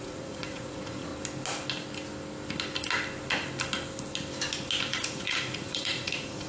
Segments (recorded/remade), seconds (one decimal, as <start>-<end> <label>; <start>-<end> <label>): 0.0-1.1 remade; 1.1-5.0 recorded; 5.0-6.5 remade